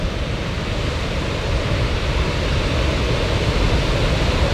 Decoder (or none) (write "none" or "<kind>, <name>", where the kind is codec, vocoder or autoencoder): none